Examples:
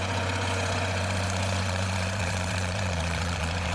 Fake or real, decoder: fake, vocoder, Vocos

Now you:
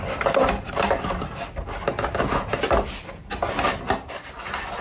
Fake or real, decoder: real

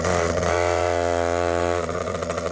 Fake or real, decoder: fake, vocoder, Vocos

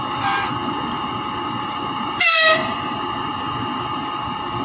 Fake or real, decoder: real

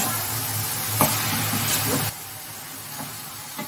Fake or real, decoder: real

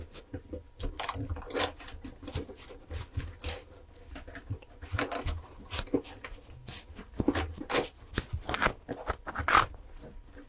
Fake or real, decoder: real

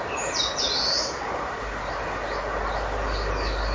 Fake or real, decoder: real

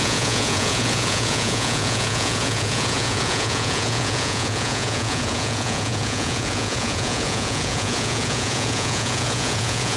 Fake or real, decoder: fake, vocoder, Vocos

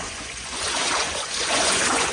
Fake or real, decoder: fake, vocoder, Vocos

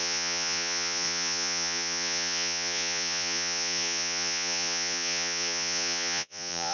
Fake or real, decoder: fake, vocoder, Vocos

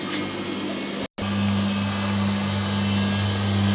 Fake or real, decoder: real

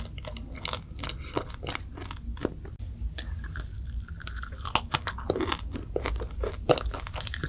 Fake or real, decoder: real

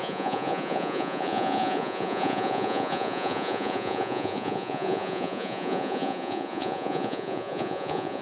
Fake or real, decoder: fake, vocoder, Vocos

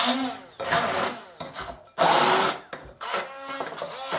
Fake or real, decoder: real